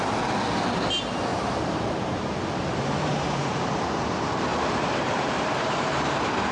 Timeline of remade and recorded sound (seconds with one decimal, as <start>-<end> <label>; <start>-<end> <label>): 0.0-1.3 recorded; 1.3-2.3 remade; 2.3-3.4 recorded; 3.4-4.0 remade; 4.0-4.5 recorded; 4.5-6.0 remade; 6.0-6.5 recorded